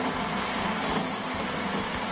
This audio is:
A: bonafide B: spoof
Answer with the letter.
A